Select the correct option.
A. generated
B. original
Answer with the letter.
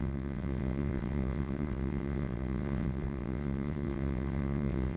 A